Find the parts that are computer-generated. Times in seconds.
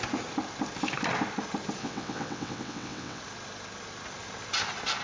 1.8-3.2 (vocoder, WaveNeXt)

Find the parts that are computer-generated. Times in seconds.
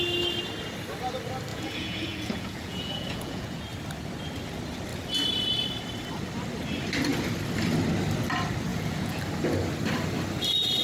1.5-3.6 (vocoder, Vocos); 8.7-9.2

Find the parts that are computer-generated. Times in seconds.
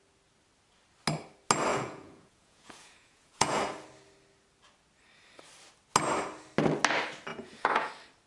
1.7-3.6 (vocoder, Vocos); 7.3-7.9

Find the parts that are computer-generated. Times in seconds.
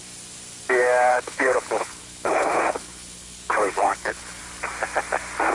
1.1-4.4 (codec, HILCodec)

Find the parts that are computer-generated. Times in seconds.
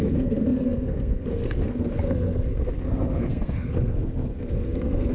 0.0-5.1 (codec, SNAC)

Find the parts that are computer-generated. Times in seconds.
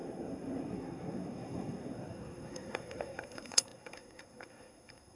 0.0-5.2 (codec, SNAC)